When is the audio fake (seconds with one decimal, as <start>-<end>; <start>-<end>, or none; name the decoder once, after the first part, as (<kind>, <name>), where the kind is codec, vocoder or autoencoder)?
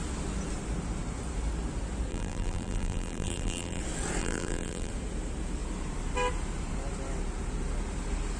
2.1-3.8 (vocoder, BigVGAN v2); 4.2-4.9